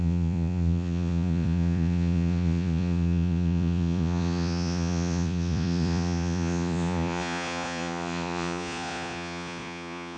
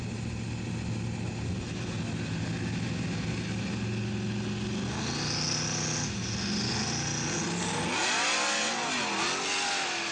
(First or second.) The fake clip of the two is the first